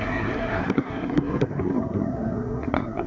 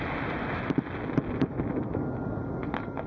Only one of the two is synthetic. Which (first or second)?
first